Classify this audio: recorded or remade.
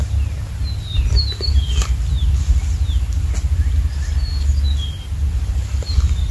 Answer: recorded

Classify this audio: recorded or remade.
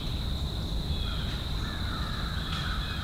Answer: recorded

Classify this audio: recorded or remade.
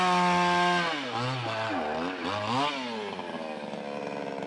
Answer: recorded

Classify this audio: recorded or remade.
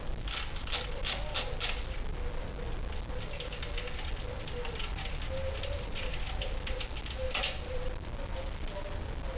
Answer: recorded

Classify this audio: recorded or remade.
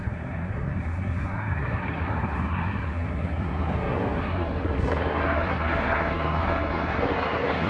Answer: remade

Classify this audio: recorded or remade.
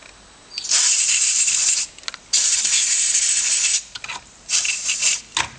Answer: recorded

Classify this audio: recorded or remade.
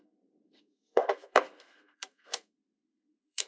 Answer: remade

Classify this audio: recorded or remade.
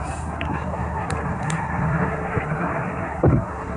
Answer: remade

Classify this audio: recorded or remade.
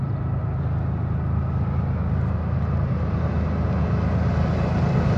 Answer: recorded